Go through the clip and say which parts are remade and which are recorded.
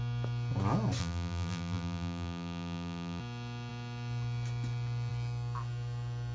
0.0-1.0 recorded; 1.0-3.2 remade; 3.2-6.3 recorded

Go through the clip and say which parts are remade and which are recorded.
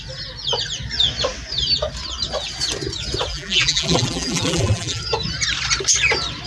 0.0-3.3 recorded; 3.3-5.0 remade; 5.0-6.5 recorded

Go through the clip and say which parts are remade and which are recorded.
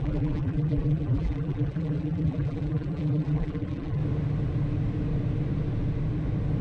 0.0-4.0 remade; 4.0-6.6 recorded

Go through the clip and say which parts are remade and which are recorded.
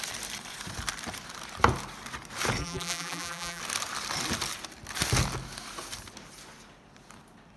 0.0-2.6 recorded; 2.6-3.6 remade; 3.6-7.6 recorded